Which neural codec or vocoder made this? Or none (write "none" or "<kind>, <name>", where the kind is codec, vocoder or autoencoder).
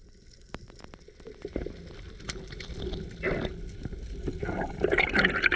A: none